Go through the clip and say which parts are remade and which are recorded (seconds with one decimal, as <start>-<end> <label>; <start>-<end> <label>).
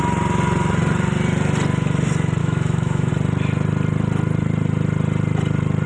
0.0-2.4 recorded; 2.4-3.1 remade; 3.1-5.9 recorded